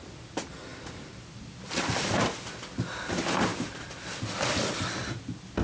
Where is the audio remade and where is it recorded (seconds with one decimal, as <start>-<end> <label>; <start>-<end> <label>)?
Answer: 0.0-0.7 recorded; 0.7-1.8 remade; 1.8-3.5 recorded; 3.5-5.1 remade; 5.1-5.6 recorded